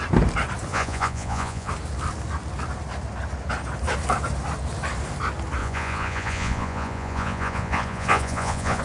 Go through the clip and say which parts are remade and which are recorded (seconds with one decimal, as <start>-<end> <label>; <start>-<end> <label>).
0.0-0.7 recorded; 0.7-1.7 remade; 1.7-5.6 recorded; 5.6-8.8 remade